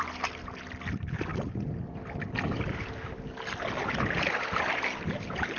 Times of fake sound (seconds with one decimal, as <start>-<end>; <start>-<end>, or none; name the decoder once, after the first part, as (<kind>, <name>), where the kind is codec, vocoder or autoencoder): none